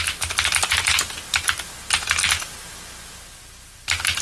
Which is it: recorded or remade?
recorded